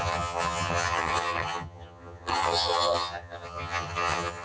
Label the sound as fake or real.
fake